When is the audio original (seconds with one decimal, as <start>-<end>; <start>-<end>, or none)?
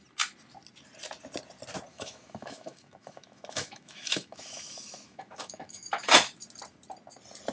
0.0-1.9; 6.1-7.5